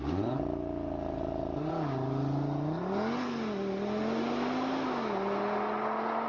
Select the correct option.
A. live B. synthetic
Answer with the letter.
A